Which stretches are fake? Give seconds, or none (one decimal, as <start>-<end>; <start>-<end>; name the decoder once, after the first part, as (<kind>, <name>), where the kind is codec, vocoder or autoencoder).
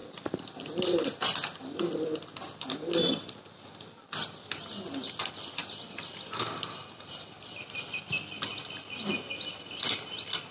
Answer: none